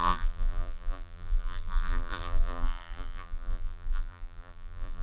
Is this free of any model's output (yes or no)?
no